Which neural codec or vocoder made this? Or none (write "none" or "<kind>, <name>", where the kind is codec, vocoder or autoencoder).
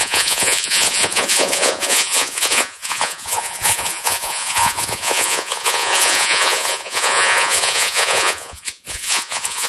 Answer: vocoder, Vocos